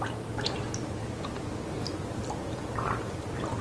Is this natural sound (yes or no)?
yes